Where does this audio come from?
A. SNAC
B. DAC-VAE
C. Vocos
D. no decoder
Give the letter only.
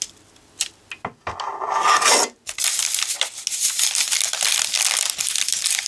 D